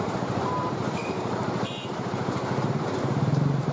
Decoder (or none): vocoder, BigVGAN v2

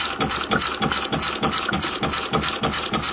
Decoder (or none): none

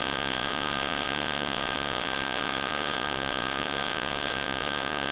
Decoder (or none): vocoder, WaveNeXt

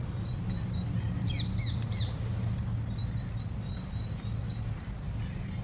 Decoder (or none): none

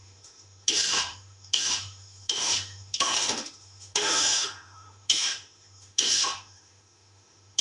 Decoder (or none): autoencoder, DAC-VAE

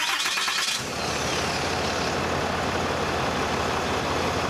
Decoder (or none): none